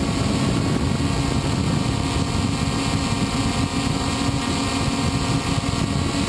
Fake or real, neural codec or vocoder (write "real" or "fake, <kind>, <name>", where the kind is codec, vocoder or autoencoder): real